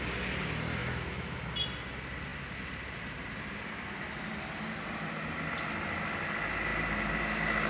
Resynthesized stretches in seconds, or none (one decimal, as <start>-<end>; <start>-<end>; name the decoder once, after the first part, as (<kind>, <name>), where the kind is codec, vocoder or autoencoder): 0.8-1.4 (autoencoder, DAC-VAE)